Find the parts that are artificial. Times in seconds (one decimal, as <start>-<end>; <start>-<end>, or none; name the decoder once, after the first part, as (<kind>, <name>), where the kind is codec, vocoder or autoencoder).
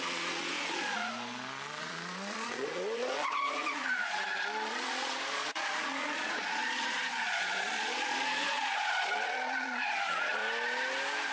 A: 0.0-1.0 (vocoder, Vocos); 1.8-10.4